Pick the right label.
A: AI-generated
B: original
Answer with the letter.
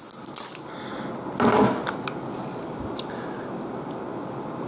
B